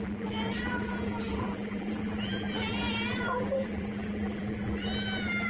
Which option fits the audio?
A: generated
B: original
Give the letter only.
A